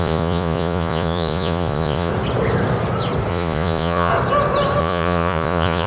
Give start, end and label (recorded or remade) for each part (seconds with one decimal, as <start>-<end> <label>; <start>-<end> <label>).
0.0-2.1 remade; 2.1-3.3 recorded; 3.3-4.1 remade; 4.1-4.8 recorded; 4.8-5.9 remade